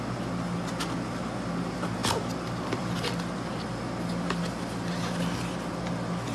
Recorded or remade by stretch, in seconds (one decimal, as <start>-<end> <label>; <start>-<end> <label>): 0.0-6.3 recorded